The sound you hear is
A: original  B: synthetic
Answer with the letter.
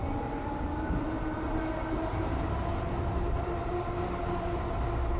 A